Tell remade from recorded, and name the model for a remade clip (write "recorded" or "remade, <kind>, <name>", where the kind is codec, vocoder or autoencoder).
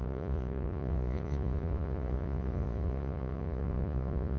remade, vocoder, Vocos